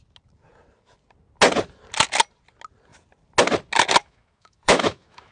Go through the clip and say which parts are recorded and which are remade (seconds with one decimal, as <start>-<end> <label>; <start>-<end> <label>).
0.0-4.0 recorded; 4.0-5.3 remade